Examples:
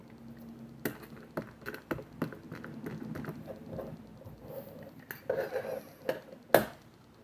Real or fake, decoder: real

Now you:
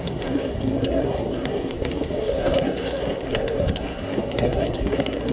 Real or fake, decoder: fake, codec, SNAC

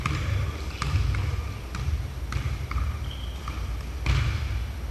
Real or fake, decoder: real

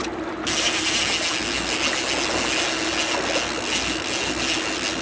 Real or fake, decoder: real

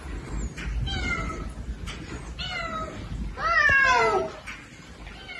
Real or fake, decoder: real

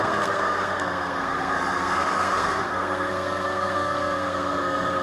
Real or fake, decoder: fake, codec, SNAC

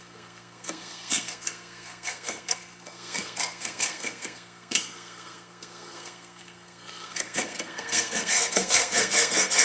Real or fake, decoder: fake, codec, SNAC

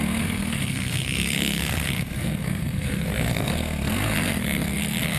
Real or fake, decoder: fake, codec, SNAC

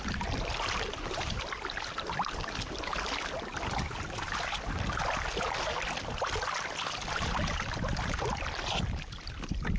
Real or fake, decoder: real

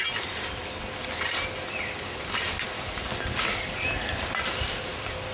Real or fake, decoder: real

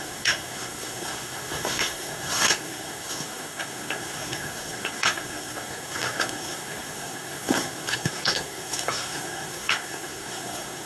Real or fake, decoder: fake, codec, SNAC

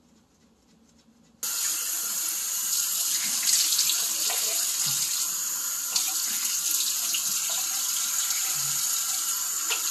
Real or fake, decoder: real